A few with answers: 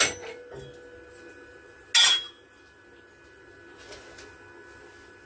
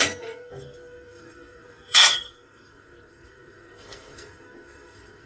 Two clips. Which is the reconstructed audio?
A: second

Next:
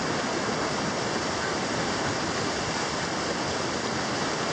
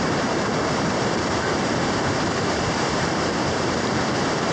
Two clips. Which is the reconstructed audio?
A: second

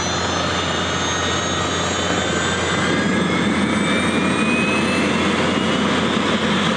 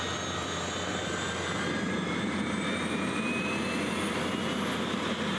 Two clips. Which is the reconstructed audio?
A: second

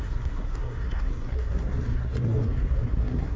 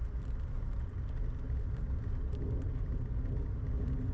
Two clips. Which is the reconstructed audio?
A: first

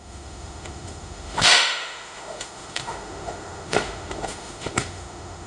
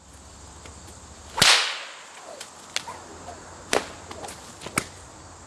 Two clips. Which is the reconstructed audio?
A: first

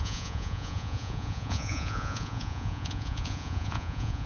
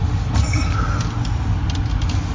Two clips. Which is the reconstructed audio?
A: first